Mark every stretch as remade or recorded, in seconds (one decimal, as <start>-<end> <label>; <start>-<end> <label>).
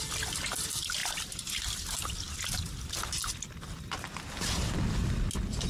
0.0-5.7 recorded